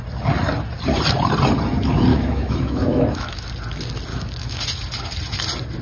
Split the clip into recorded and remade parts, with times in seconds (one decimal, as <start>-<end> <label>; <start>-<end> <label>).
0.0-2.1 recorded; 2.1-3.5 remade; 3.5-4.1 recorded; 4.1-4.6 remade; 4.6-5.8 recorded